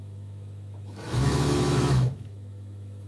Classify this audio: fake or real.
fake